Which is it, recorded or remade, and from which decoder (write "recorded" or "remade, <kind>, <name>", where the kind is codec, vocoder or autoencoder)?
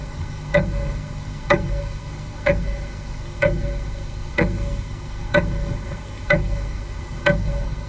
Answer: remade, codec, SNAC